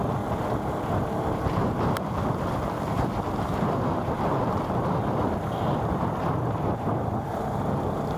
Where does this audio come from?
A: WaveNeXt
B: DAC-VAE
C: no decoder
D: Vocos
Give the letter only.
C